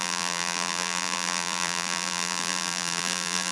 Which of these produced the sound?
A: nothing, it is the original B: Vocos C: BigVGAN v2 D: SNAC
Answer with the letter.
C